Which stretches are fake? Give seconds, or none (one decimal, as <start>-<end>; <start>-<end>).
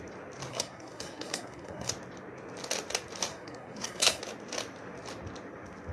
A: 0.5-1.9; 3.3-4.2